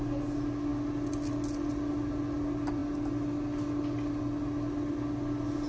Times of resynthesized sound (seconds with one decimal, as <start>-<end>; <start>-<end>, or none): none